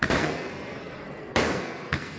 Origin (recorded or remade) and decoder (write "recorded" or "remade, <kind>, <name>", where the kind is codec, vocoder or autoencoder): remade, codec, SNAC